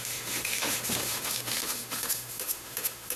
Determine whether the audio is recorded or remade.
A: remade